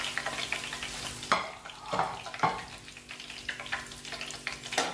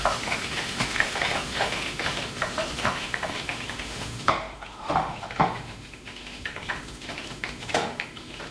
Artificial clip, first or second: second